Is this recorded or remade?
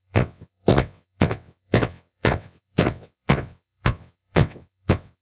remade